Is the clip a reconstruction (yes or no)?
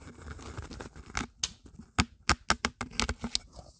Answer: no